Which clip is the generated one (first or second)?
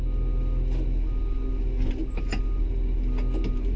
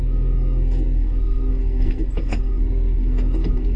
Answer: second